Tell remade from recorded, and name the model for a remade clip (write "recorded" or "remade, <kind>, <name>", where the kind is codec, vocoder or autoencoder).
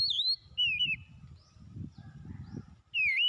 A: recorded